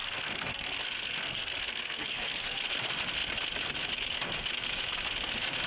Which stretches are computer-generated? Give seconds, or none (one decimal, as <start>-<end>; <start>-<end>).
0.0-2.6